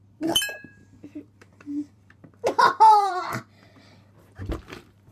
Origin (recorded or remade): remade